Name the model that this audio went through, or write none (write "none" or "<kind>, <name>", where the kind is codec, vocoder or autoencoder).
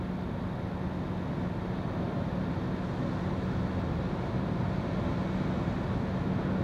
none